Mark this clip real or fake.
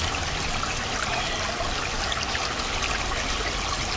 real